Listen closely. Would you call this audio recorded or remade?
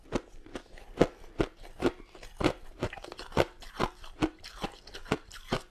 recorded